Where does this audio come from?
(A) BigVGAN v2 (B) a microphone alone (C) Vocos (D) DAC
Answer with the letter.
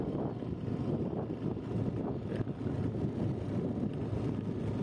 B